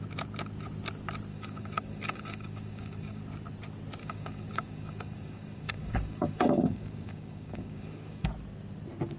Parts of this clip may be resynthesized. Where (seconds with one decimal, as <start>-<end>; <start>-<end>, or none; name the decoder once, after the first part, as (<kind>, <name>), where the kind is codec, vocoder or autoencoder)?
1.3-3.2 (codec, DAC); 4.0-8.3